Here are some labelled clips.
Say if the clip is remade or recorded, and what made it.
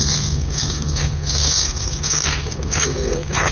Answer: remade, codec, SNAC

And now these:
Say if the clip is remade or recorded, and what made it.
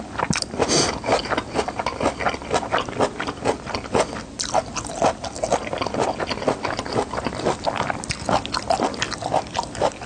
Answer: recorded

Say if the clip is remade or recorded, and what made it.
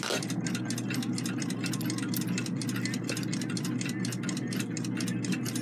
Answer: recorded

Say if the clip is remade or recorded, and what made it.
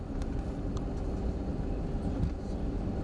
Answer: recorded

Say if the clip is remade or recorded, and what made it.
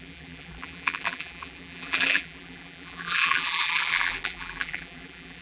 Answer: remade, vocoder, BigVGAN v2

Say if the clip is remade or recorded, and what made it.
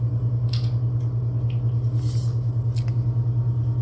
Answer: recorded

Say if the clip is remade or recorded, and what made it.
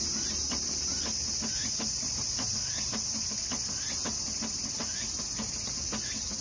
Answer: recorded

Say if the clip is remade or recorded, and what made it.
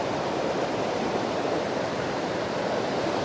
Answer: remade, vocoder, BigVGAN v2